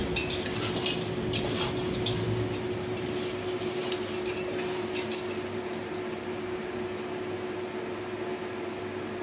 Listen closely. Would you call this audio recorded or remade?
recorded